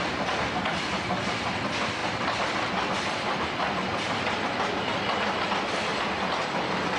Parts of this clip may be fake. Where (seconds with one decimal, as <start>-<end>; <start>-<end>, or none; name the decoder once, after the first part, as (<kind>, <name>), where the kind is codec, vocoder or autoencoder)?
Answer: none